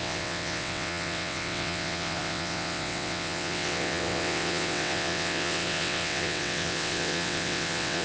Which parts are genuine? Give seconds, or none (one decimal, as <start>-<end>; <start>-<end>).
none